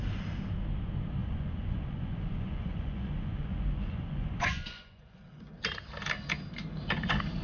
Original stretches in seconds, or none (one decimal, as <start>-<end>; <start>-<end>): 0.0-1.2; 5.6-7.4